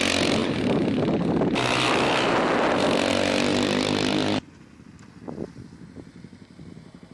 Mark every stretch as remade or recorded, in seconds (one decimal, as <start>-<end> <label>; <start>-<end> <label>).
0.0-7.1 recorded